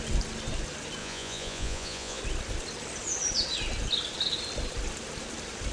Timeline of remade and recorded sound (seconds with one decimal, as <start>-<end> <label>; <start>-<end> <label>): 0.0-1.0 recorded; 1.0-2.2 remade; 2.2-5.7 recorded